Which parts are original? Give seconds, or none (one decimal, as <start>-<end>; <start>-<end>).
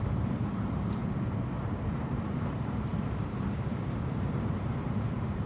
1.0-2.2